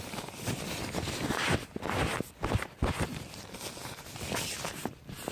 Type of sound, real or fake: real